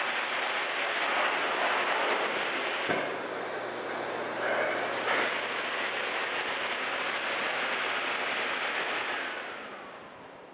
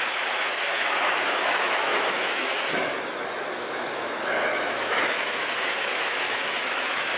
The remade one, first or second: second